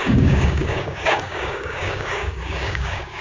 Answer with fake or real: fake